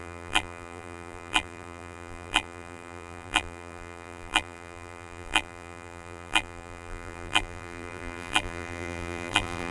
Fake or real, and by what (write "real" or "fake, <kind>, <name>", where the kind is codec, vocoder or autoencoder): fake, vocoder, BigVGAN v2